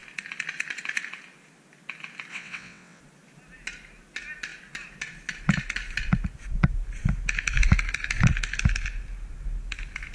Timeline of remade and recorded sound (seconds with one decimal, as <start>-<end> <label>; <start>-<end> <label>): 0.0-2.3 recorded; 2.3-3.0 remade; 3.0-10.1 recorded